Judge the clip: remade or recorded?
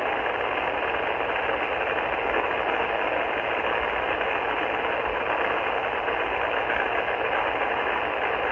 recorded